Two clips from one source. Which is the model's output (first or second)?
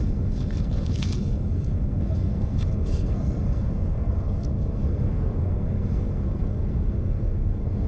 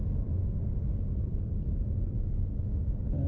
first